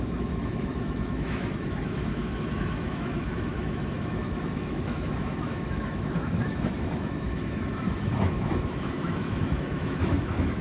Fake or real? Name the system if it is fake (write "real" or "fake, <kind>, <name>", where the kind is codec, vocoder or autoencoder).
fake, autoencoder, DAC-VAE